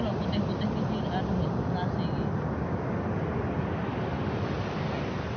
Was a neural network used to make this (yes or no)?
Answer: no